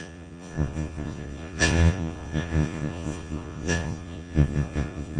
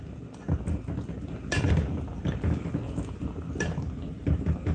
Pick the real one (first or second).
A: second